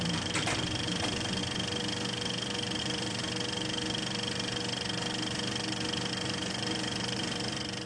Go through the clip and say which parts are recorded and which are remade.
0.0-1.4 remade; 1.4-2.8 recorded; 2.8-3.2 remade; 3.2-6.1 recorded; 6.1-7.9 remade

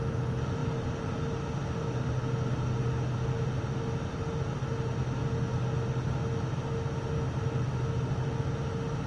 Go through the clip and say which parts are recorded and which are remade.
0.0-9.1 recorded

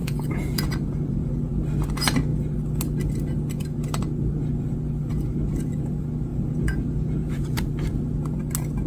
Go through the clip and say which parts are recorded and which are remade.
0.0-1.5 remade; 1.5-6.3 recorded; 6.3-7.8 remade; 7.8-8.9 recorded

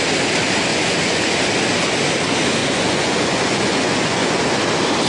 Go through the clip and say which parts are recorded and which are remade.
0.0-0.7 recorded; 0.7-1.4 remade; 1.4-2.6 recorded; 2.6-4.4 remade; 4.4-5.1 recorded

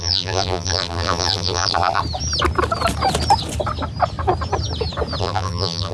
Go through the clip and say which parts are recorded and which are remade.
0.0-2.0 remade; 2.0-5.2 recorded; 5.2-5.9 remade

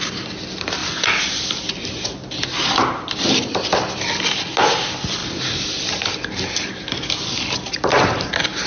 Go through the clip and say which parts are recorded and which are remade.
0.0-8.7 recorded